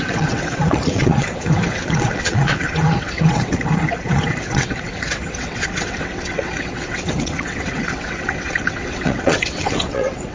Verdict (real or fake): fake